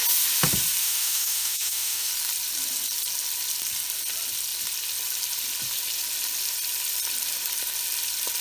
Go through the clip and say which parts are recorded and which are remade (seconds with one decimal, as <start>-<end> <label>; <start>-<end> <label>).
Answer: 0.0-0.8 recorded; 0.8-2.1 remade; 2.1-8.4 recorded